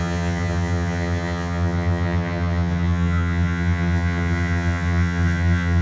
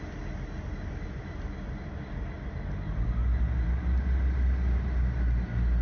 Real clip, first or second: second